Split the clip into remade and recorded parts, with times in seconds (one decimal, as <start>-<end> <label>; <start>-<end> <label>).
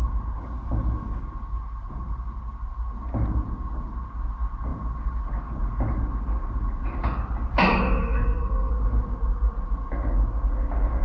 0.0-8.0 recorded; 8.0-8.7 remade; 8.7-11.0 recorded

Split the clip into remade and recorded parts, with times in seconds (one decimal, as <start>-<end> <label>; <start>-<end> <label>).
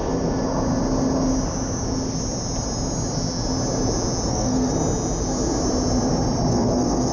0.0-4.3 recorded; 4.3-4.7 remade; 4.7-6.5 recorded; 6.5-7.1 remade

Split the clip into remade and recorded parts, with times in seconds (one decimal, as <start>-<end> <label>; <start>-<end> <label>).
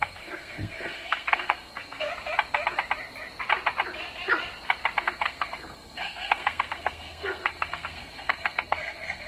0.0-2.1 remade; 2.1-5.0 recorded; 5.0-9.3 remade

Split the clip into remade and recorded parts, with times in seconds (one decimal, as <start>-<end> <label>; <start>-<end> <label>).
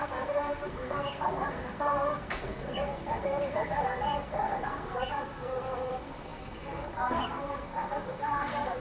0.0-8.8 remade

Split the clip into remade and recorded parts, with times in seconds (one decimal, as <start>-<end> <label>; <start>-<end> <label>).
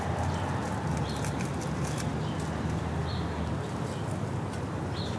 0.0-5.2 recorded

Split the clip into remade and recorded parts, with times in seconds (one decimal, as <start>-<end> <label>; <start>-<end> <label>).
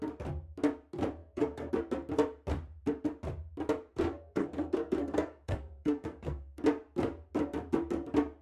0.0-1.2 recorded; 1.2-1.7 remade; 1.7-3.9 recorded; 3.9-6.6 remade; 6.6-8.4 recorded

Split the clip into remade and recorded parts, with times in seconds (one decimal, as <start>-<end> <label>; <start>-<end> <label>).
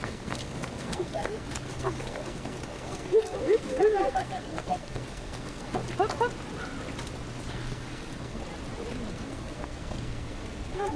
0.0-5.8 remade; 5.8-7.5 recorded; 7.5-8.5 remade; 8.5-9.1 recorded; 9.1-11.0 remade